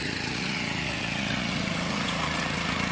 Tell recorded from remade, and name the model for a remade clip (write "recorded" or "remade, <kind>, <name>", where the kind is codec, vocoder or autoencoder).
remade, vocoder, Vocos